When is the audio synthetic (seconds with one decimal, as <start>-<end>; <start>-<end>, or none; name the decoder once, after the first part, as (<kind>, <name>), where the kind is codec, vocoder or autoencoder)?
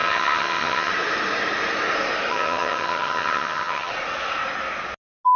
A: 0.0-0.9 (vocoder, HiFi-GAN); 2.3-3.9